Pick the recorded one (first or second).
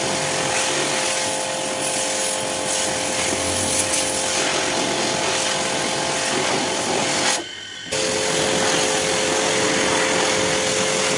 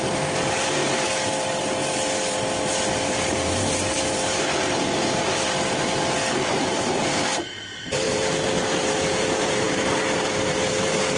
first